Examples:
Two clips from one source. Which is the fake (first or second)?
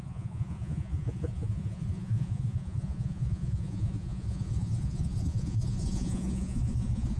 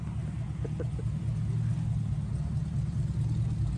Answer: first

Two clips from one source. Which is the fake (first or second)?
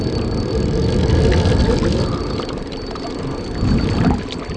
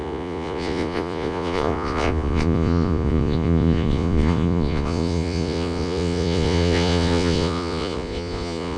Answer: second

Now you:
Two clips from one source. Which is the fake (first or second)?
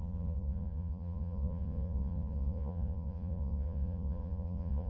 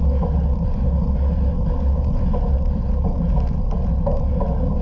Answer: first